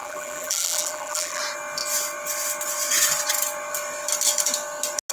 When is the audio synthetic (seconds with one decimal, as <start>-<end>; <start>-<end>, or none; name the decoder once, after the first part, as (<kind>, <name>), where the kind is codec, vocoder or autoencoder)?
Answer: 0.0-1.4 (vocoder, BigVGAN v2)